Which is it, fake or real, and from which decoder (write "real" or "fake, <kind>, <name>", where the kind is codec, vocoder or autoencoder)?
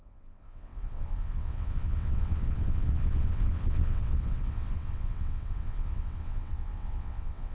fake, vocoder, WaveNeXt